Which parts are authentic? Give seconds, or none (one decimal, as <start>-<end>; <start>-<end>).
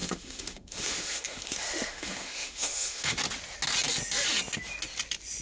3.2-5.4